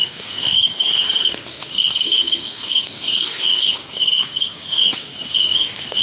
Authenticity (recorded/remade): remade